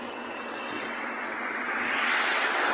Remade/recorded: remade